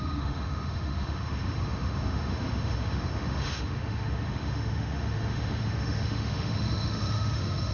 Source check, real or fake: fake